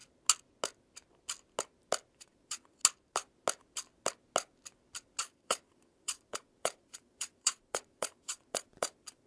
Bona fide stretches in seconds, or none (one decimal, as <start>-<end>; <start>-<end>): 0.0-2.2; 2.8-5.2